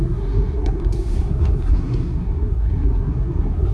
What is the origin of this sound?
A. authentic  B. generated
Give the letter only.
B